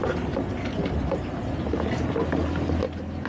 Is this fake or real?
real